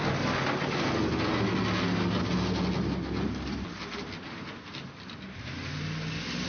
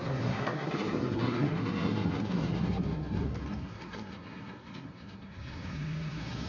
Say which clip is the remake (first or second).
second